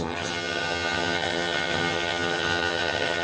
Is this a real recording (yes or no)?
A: no